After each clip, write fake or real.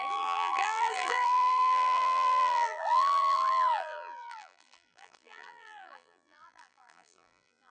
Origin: fake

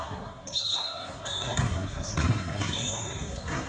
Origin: fake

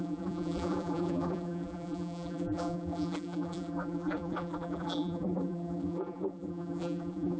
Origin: fake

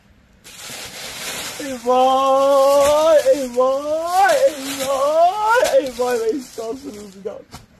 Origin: real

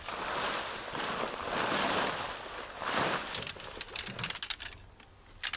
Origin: real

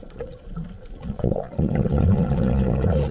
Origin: fake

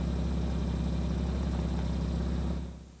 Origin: real